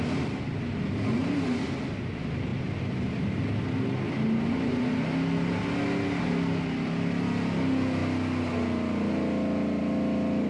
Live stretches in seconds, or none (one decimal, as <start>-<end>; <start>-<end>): 0.0-10.5